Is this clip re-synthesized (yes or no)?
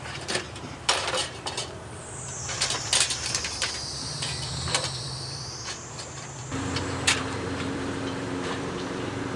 yes